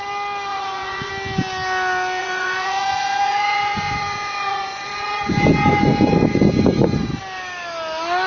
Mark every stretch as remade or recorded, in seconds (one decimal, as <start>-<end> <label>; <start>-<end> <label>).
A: 0.0-0.5 recorded; 0.5-1.1 remade; 1.1-2.2 recorded; 2.2-7.2 remade; 7.2-8.3 recorded

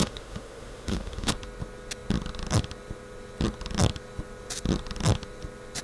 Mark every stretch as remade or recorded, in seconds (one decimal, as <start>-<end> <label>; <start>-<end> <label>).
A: 0.0-1.3 remade; 1.3-5.8 recorded

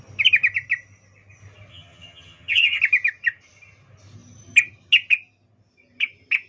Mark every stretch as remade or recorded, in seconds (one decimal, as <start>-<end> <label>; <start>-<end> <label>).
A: 0.0-1.7 recorded; 1.7-2.8 remade; 2.8-6.5 recorded

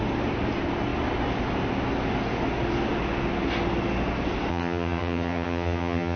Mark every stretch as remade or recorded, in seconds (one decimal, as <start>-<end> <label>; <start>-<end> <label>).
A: 0.0-4.5 recorded; 4.5-6.2 remade

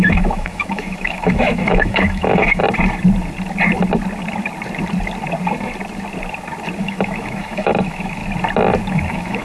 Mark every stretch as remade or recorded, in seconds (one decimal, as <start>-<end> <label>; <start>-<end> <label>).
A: 0.0-2.6 remade; 2.6-6.8 recorded; 6.8-8.2 remade; 8.2-8.9 recorded; 8.9-9.4 remade

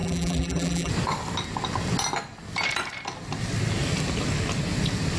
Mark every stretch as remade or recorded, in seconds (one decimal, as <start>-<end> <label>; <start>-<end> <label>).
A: 0.0-0.9 remade; 0.9-5.2 recorded

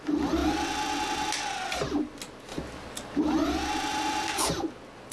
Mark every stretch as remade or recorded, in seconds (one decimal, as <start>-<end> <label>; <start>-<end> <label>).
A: 0.0-3.9 recorded; 3.9-4.5 remade; 4.5-5.1 recorded

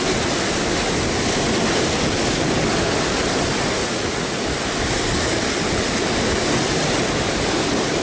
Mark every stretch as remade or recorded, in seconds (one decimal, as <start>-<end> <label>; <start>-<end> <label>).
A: 0.0-3.8 recorded; 3.8-4.4 remade; 4.4-8.0 recorded